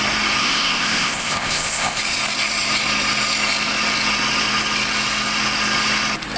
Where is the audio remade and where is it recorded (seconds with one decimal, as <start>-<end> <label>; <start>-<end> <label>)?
0.0-0.4 recorded; 0.4-2.0 remade; 2.0-6.4 recorded